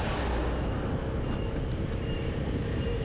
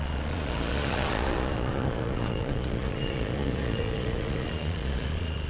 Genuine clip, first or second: first